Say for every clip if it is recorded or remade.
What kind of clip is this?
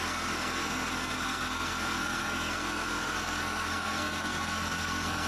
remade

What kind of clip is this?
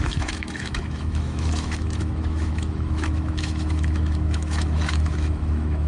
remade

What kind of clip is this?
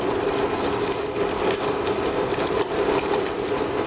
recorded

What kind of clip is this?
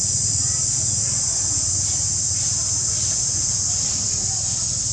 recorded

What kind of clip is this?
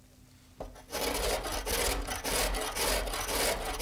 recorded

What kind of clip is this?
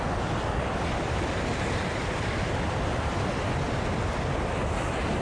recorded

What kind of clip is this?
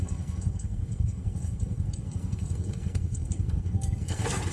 remade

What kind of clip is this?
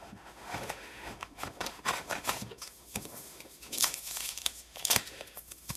remade